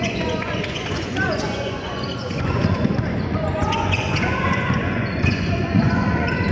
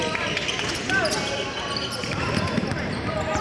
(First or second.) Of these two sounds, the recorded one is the second